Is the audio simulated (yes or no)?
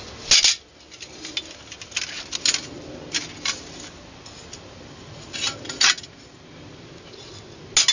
no